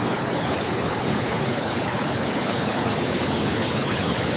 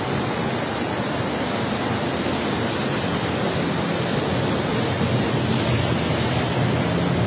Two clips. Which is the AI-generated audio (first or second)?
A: first